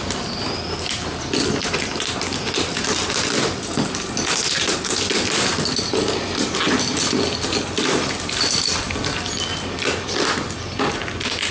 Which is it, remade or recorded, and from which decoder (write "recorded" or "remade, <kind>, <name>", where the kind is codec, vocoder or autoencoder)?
recorded